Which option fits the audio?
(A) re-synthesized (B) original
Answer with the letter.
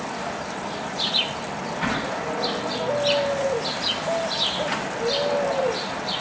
B